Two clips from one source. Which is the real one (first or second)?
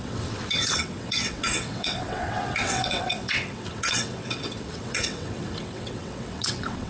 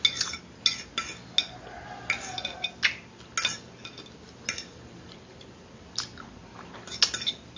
second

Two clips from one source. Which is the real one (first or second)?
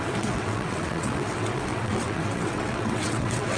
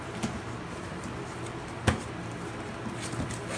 second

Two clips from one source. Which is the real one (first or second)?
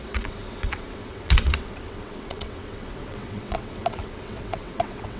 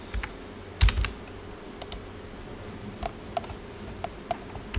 second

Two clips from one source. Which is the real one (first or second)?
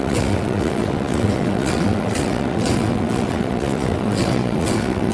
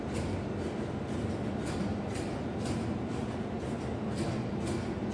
second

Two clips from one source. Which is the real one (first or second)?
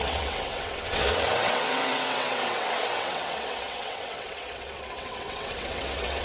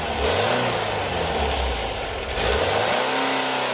second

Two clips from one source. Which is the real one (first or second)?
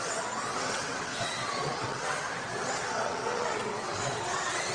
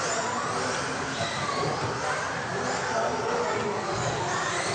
second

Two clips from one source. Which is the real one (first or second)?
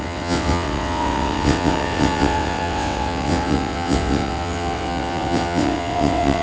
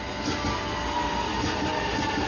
second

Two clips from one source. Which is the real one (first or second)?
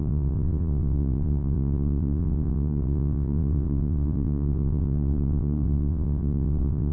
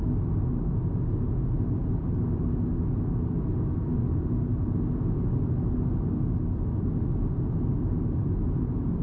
second